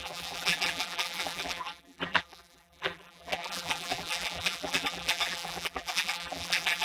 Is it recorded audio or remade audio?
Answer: remade